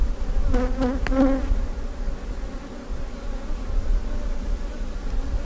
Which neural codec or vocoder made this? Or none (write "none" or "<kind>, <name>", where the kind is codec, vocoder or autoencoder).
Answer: none